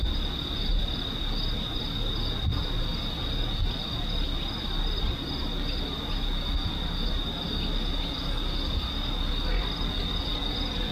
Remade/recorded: recorded